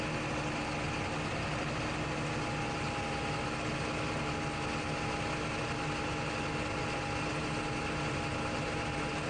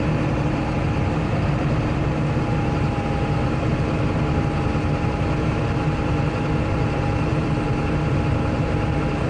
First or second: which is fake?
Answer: second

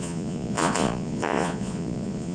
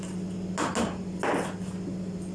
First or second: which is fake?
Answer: first